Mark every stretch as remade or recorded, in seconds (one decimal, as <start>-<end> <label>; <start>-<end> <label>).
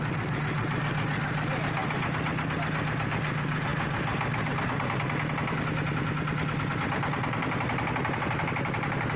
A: 0.0-9.2 recorded